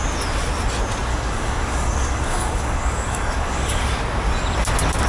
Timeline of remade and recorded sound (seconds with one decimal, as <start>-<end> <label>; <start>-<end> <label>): 0.0-1.1 recorded; 1.1-3.8 remade; 3.8-5.1 recorded